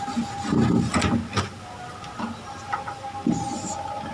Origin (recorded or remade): recorded